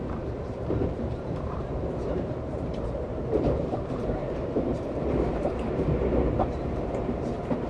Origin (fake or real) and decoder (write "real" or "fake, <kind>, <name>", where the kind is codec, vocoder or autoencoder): fake, vocoder, BigVGAN v2